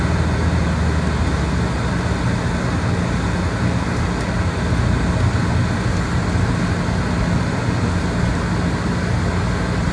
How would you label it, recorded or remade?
recorded